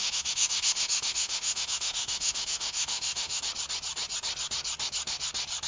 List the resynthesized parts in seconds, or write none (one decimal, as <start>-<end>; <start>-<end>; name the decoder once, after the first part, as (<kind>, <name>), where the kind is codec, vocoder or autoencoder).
0.0-3.4 (autoencoder, DAC-VAE)